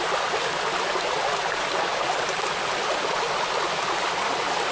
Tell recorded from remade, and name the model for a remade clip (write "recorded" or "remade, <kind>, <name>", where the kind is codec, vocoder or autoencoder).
recorded